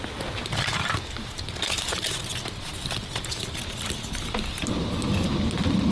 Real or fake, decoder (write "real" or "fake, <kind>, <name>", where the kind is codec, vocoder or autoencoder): real